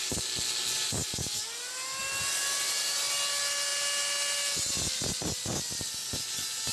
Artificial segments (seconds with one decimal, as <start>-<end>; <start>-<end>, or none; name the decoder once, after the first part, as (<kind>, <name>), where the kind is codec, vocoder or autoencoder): none